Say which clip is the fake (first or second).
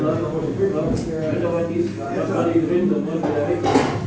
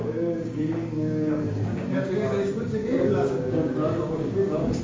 second